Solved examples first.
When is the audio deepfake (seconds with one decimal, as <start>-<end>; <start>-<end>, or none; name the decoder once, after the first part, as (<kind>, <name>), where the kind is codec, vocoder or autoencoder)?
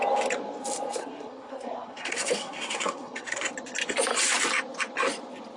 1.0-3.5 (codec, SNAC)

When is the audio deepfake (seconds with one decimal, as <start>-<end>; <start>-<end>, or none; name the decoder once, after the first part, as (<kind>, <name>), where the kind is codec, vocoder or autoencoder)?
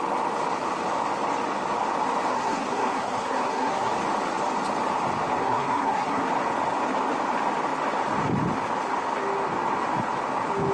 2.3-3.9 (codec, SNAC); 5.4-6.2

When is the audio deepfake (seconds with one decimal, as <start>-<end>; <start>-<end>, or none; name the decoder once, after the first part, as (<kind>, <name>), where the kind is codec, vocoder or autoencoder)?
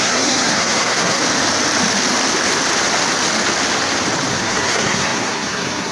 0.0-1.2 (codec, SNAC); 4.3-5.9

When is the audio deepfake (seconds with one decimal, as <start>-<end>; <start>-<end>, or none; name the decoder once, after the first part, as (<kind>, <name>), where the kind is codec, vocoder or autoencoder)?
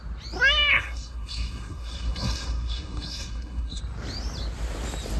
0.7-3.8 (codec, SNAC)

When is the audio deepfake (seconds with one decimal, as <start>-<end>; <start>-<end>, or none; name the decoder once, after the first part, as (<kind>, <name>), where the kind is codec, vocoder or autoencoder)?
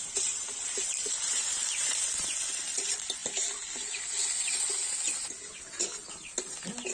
none